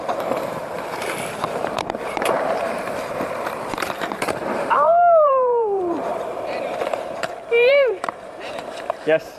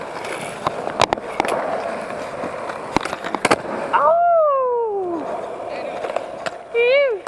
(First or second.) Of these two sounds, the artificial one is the first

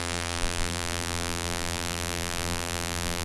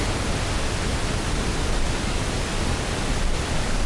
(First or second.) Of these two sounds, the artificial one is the first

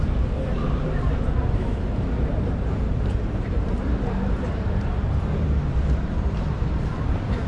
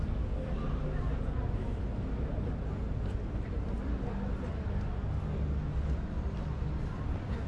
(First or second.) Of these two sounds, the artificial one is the first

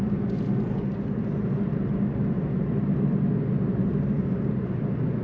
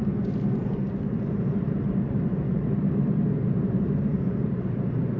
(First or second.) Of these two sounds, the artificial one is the second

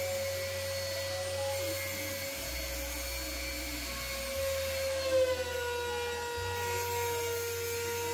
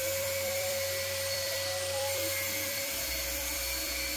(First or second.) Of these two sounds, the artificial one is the second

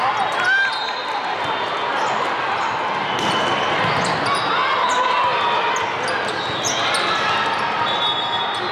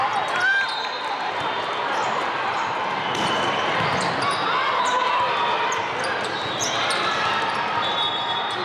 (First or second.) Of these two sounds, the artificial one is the second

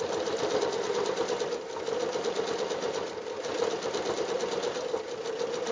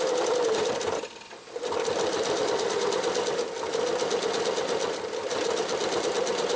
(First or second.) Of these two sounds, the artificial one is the second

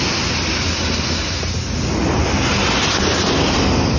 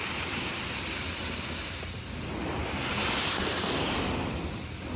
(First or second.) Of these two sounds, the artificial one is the second